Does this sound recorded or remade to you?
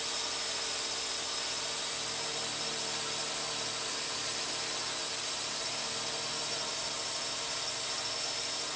recorded